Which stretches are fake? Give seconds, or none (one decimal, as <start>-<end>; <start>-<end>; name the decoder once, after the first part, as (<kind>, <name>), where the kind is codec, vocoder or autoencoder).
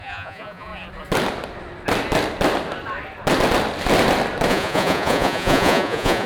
0.0-0.7 (vocoder, Vocos); 4.5-6.3